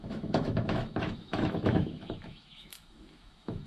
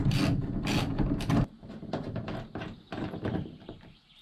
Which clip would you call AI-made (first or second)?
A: first